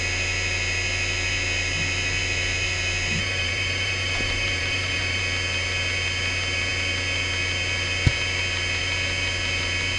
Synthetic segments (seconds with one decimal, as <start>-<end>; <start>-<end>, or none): 3.2-5.2